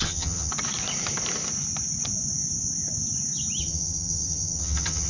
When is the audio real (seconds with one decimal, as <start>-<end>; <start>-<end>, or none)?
0.5-3.6